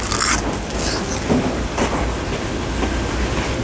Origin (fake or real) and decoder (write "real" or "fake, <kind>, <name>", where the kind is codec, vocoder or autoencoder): real